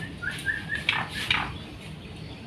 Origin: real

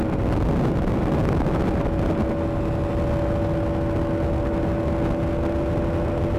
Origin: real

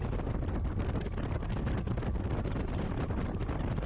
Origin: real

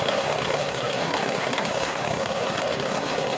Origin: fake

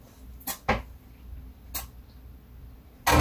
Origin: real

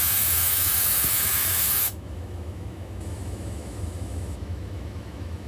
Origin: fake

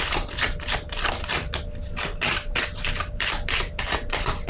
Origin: real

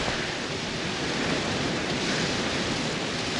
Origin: real